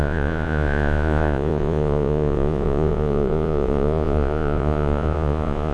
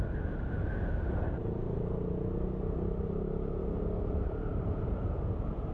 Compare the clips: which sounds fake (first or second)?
first